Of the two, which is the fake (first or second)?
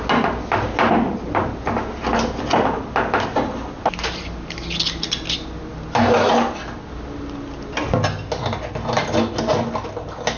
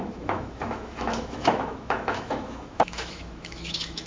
second